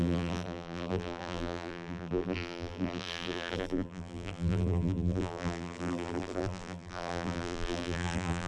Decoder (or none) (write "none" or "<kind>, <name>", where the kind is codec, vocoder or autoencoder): vocoder, BigVGAN v2